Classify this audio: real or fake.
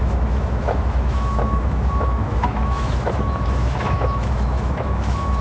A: fake